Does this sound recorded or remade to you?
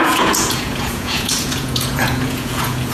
remade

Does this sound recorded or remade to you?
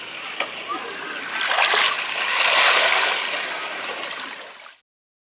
recorded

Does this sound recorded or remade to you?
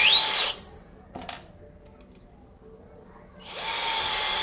recorded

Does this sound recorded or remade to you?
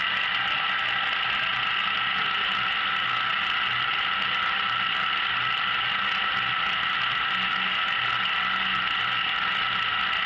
recorded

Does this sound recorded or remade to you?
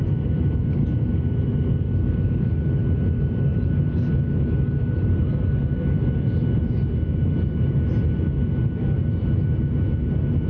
recorded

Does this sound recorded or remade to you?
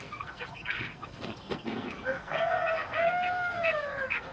remade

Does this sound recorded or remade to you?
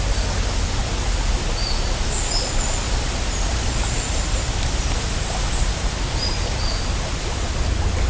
recorded